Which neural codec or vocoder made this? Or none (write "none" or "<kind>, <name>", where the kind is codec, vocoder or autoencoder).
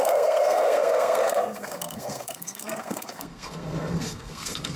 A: codec, SNAC